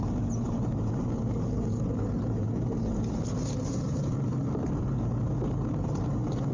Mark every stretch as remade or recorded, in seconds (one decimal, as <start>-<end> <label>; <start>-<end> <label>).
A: 0.0-6.5 recorded

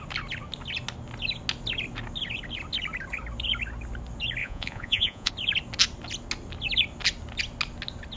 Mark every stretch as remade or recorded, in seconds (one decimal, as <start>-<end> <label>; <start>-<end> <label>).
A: 0.0-4.4 recorded; 4.4-5.3 remade; 5.3-8.2 recorded

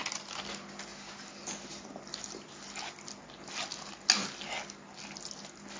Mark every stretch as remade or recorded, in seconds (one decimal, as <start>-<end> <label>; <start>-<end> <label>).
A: 0.0-5.8 recorded

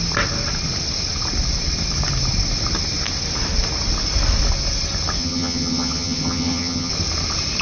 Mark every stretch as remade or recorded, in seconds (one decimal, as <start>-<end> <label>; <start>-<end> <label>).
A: 0.0-5.2 recorded; 5.2-6.9 remade; 6.9-7.6 recorded

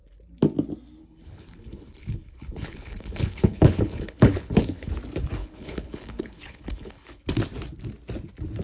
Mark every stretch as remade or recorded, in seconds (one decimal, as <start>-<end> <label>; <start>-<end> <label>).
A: 0.0-1.0 recorded; 1.0-4.9 remade; 4.9-5.4 recorded; 5.4-7.2 remade; 7.2-8.6 recorded

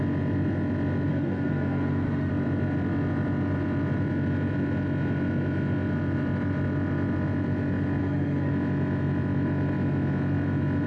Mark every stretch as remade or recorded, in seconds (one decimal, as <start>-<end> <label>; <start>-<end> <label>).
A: 0.0-1.1 recorded; 1.1-2.3 remade; 2.3-8.0 recorded; 8.0-8.5 remade; 8.5-10.9 recorded

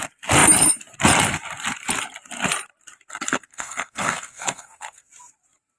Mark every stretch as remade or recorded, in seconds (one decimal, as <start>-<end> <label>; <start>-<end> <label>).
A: 0.0-3.3 recorded; 3.3-5.1 remade; 5.1-5.8 recorded

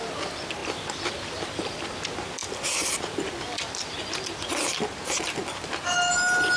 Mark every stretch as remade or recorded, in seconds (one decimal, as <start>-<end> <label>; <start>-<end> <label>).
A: 0.0-6.6 recorded